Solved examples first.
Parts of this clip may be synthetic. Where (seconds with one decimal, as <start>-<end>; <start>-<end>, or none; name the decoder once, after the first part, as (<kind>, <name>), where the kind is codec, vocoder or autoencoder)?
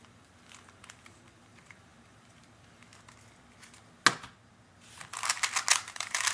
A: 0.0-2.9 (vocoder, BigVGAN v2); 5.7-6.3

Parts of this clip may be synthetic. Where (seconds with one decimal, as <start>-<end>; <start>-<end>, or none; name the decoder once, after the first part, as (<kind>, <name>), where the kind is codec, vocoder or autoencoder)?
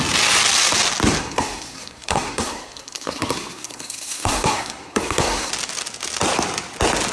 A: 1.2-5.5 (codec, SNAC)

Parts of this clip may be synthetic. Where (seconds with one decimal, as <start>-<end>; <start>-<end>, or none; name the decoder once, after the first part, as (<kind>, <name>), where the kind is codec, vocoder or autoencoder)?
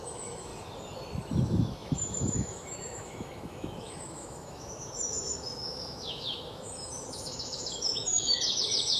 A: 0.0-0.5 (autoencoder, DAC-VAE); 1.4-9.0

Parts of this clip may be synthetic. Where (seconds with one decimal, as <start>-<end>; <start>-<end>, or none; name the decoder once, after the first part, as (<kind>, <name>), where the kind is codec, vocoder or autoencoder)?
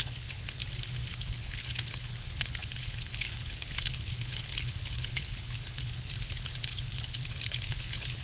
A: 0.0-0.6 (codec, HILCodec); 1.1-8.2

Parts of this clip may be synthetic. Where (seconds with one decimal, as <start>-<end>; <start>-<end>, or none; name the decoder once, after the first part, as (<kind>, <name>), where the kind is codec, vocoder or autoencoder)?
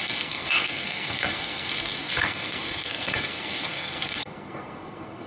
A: 0.0-5.3 (codec, SNAC)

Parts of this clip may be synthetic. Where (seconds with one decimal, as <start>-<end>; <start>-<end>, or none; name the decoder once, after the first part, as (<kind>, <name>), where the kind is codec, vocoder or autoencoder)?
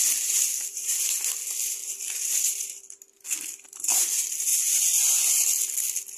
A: none